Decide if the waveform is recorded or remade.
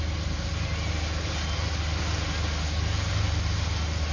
recorded